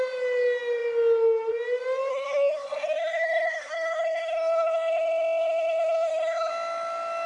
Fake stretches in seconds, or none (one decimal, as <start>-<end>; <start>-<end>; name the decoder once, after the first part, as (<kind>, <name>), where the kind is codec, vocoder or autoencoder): 2.1-6.5 (codec, SNAC)